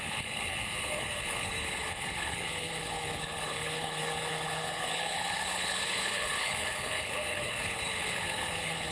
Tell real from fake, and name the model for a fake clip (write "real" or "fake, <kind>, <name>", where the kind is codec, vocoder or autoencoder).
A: fake, codec, HILCodec